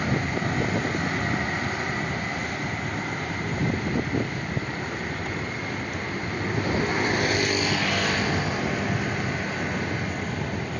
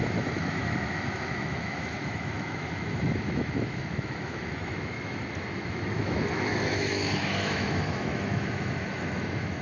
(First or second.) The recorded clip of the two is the first